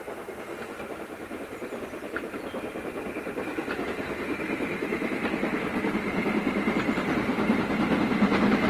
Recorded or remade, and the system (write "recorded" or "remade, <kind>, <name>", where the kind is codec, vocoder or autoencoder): recorded